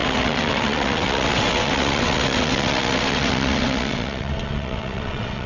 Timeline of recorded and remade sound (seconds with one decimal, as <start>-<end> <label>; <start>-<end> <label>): 0.0-5.5 remade